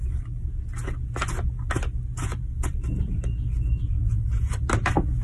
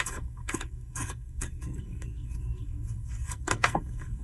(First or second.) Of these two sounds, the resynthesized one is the second